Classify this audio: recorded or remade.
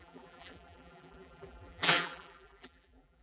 remade